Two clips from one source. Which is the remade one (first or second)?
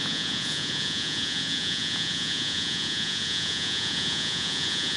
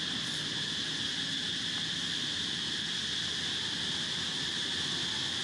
first